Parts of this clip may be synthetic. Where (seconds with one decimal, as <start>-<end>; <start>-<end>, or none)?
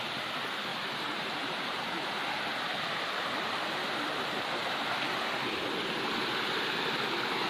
0.7-2.2